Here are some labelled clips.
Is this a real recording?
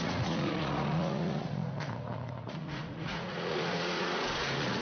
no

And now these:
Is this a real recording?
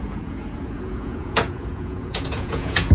no